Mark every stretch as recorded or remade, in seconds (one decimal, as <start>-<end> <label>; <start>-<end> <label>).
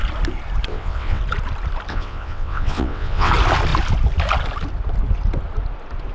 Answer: 0.0-0.7 recorded; 0.7-1.2 remade; 1.2-1.9 recorded; 1.9-3.3 remade; 3.3-6.1 recorded